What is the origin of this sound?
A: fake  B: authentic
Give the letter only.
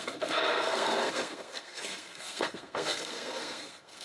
A